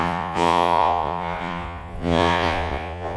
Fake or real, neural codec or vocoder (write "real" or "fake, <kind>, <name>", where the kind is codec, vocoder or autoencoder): fake, vocoder, Vocos